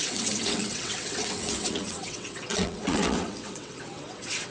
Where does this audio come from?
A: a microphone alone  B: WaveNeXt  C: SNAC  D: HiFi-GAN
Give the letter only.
B